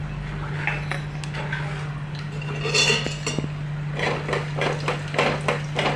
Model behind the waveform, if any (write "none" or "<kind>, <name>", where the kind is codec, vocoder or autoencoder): none